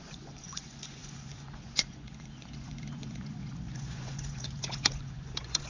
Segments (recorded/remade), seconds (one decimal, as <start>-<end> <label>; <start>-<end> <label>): 0.0-5.7 remade